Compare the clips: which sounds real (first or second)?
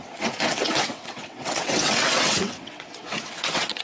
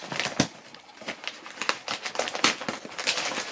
second